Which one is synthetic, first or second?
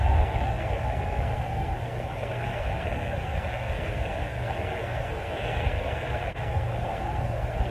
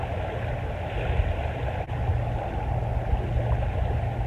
first